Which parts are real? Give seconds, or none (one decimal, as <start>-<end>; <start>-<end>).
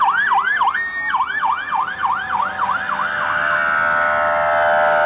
0.0-5.1